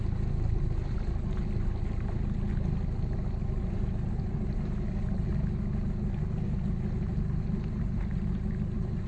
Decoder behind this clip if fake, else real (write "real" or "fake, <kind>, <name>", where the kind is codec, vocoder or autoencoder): real